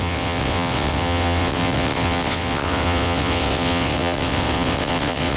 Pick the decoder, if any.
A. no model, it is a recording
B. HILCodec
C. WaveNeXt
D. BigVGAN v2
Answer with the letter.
C